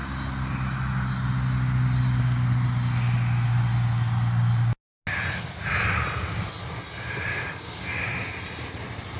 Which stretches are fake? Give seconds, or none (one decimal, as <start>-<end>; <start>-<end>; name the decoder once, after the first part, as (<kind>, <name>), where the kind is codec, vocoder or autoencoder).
7.3-8.3 (codec, DAC)

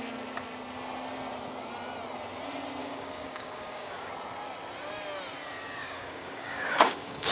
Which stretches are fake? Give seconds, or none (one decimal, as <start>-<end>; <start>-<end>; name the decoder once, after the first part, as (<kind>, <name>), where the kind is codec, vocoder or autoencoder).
2.8-4.1 (codec, DAC); 5.8-7.3

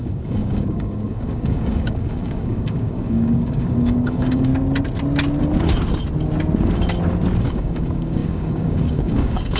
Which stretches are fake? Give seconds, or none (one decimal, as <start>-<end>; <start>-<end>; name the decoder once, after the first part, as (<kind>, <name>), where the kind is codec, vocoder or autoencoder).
0.0-4.5 (codec, DAC); 7.4-9.6

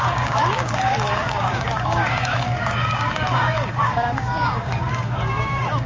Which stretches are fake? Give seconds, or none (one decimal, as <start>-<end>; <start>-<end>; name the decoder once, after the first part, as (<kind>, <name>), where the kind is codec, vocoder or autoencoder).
0.0-5.9 (codec, DAC)

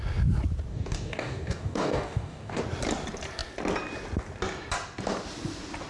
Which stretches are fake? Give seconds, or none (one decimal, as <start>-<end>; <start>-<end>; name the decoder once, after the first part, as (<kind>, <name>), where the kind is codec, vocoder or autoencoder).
0.7-2.6 (codec, DAC)

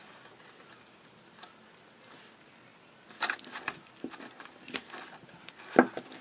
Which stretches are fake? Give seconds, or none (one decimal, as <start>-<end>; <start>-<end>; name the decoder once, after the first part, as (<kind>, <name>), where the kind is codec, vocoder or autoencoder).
none